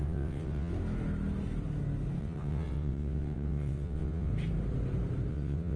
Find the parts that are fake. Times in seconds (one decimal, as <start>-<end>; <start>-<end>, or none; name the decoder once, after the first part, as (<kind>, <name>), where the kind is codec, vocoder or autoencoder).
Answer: 0.0-0.7 (vocoder, WaveNeXt); 2.2-4.3; 5.3-5.8

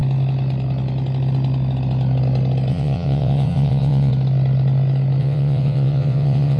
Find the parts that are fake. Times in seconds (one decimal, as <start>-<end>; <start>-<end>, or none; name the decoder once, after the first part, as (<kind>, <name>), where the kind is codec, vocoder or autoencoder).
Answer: 2.7-4.1 (vocoder, WaveNeXt); 5.2-6.6

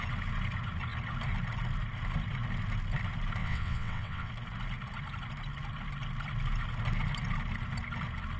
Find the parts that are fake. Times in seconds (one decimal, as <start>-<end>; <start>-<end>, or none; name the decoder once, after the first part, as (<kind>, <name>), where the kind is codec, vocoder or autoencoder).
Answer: 3.4-4.3 (vocoder, WaveNeXt)

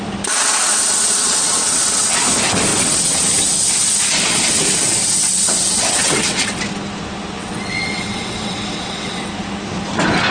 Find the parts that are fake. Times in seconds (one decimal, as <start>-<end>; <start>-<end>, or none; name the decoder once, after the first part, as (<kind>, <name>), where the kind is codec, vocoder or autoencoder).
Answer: 1.2-2.2 (vocoder, WaveNeXt); 2.7-3.2; 5.0-6.6; 7.4-9.3

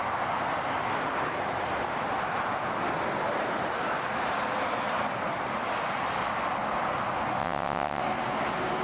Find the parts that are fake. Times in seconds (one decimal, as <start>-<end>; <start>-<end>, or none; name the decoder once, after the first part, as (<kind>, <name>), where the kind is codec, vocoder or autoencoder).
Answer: 7.4-8.0 (vocoder, WaveNeXt)

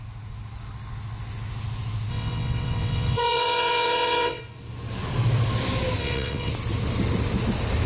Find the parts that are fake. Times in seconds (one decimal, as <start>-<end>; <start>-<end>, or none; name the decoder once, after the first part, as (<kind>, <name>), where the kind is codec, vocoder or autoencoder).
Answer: 2.1-4.4 (vocoder, WaveNeXt); 6.0-6.5

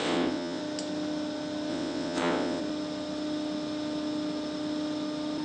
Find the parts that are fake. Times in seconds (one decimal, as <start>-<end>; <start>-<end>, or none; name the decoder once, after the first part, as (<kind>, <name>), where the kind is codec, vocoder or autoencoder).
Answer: 0.0-0.6 (vocoder, WaveNeXt); 1.7-2.6